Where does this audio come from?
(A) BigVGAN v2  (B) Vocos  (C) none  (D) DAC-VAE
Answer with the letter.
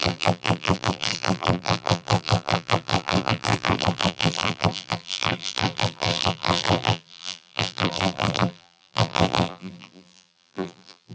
A